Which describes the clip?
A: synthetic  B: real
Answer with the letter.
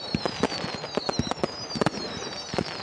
B